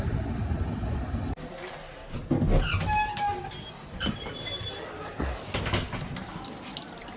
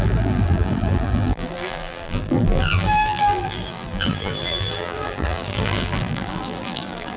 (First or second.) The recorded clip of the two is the first